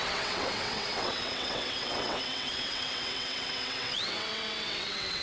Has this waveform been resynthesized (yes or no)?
yes